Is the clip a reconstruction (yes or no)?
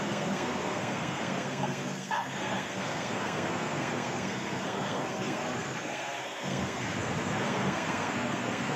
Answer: yes